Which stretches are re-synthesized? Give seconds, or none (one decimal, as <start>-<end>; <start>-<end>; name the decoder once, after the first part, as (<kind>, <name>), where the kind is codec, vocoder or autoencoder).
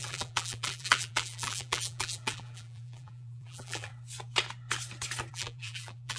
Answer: 0.0-3.9 (vocoder, BigVGAN v2); 5.3-6.2